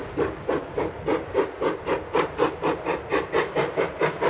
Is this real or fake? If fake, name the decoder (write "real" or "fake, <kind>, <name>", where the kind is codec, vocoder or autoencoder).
real